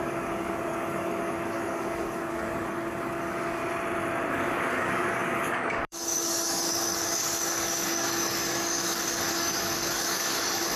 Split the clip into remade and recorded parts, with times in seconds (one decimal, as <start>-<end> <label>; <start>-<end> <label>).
0.0-3.6 remade; 3.6-4.3 recorded; 4.3-10.8 remade